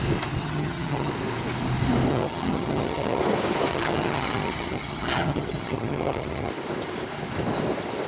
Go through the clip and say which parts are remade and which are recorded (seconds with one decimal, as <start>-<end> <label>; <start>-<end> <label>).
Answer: 0.0-0.4 recorded; 0.4-1.1 remade; 1.1-2.1 recorded; 2.1-3.2 remade; 3.2-3.7 recorded; 3.7-6.5 remade; 6.5-8.1 recorded